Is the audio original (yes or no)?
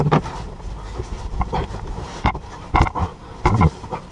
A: no